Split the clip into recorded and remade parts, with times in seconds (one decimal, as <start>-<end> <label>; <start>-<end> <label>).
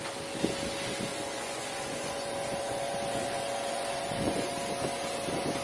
0.0-1.1 recorded; 1.1-4.5 remade; 4.5-5.6 recorded